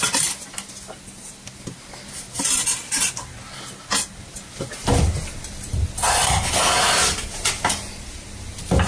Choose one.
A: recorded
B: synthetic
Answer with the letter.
A